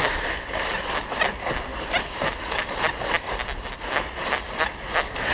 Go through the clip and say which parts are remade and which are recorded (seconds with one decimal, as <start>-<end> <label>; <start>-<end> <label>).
0.0-5.3 recorded